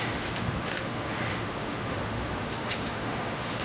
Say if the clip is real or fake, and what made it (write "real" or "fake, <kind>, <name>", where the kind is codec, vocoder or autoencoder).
fake, autoencoder, DAC-VAE